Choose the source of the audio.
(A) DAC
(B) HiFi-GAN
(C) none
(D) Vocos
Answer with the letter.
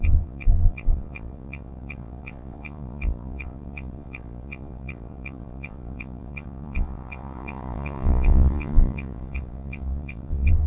D